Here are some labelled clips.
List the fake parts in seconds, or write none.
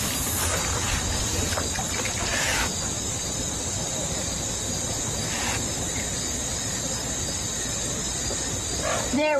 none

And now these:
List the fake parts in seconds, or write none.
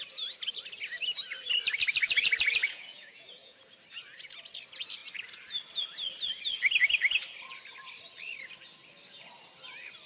2.6-3.6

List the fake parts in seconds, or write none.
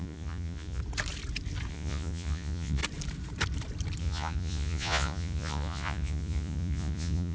0.0-0.8; 1.7-2.8; 4.0-7.3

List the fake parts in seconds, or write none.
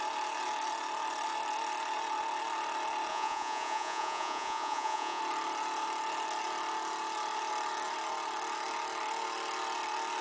3.1-5.2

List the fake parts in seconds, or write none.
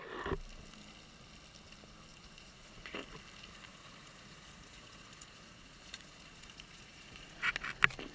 2.1-3.0; 3.7-7.5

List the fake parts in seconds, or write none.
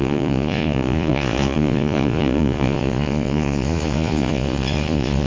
0.0-5.3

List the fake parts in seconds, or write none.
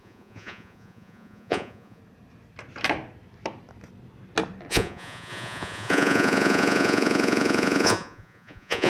0.0-2.0; 4.7-8.9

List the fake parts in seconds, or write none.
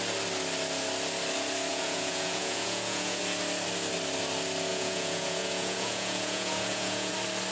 1.7-3.2; 4.7-7.1